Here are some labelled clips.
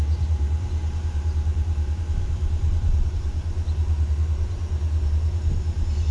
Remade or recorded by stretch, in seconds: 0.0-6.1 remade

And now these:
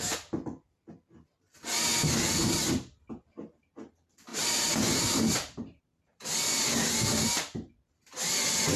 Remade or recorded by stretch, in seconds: 0.0-4.3 recorded; 4.3-6.0 remade; 6.0-8.8 recorded

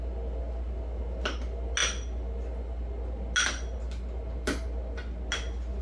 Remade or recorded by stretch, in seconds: 0.0-5.8 recorded

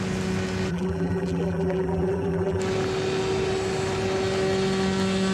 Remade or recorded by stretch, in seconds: 0.0-0.7 recorded; 0.7-2.6 remade; 2.6-5.3 recorded

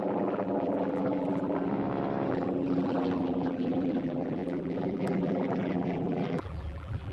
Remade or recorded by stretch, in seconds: 0.0-1.7 remade; 1.7-2.3 recorded; 2.3-7.1 remade

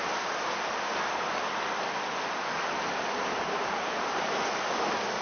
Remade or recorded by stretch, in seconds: 0.0-3.3 recorded; 3.3-4.3 remade; 4.3-5.2 recorded

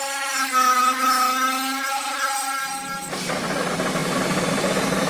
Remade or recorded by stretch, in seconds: 0.0-1.9 recorded; 1.9-5.1 remade

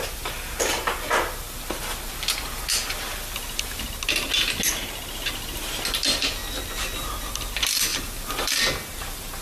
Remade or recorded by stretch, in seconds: 0.0-7.9 recorded; 7.9-8.6 remade; 8.6-9.4 recorded